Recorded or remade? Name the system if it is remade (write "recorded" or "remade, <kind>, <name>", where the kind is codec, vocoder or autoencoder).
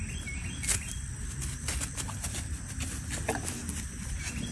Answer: recorded